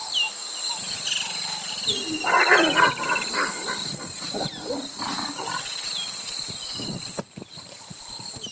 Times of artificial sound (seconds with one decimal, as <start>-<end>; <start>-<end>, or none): 1.7-4.5; 5.5-8.5

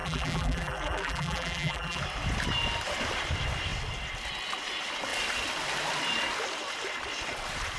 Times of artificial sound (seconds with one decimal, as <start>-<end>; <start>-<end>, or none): 0.0-2.0

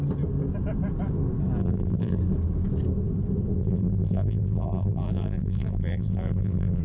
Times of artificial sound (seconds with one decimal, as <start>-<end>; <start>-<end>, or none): 1.6-2.2; 3.6-6.8